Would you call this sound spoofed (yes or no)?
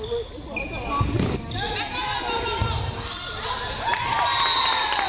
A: no